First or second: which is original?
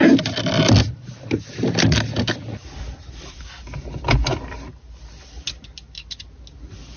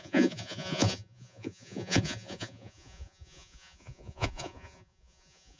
first